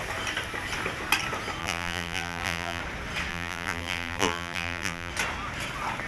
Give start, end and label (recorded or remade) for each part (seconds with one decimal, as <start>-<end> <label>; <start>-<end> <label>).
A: 0.0-1.6 recorded; 1.6-2.8 remade; 2.8-3.3 recorded; 3.3-5.1 remade; 5.1-6.1 recorded